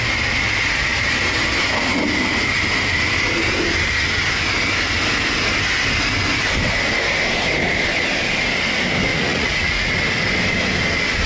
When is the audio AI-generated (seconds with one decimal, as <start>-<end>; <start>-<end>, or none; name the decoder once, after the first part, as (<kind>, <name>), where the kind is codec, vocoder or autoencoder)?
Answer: 9.1-9.9 (vocoder, Vocos)

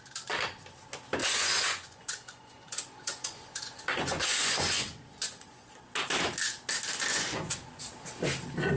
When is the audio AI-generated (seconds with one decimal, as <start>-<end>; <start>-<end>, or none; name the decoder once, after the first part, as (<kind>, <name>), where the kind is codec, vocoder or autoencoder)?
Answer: 1.2-5.7 (vocoder, Vocos); 7.1-7.8